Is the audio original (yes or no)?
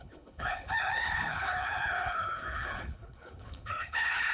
no